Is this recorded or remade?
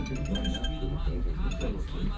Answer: recorded